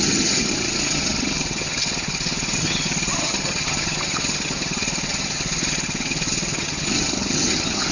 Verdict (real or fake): fake